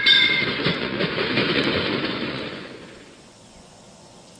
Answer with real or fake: fake